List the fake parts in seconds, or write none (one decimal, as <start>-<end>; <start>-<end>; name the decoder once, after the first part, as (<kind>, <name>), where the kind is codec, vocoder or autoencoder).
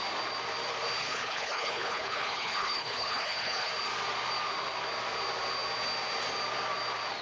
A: 1.0-3.7 (codec, HILCodec)